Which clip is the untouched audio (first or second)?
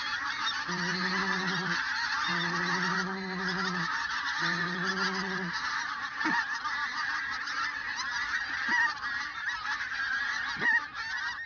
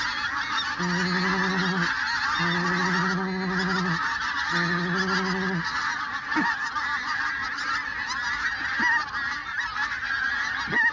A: second